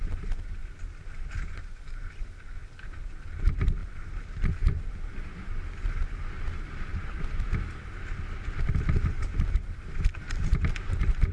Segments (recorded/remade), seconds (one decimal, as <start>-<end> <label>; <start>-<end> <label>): 0.0-11.3 recorded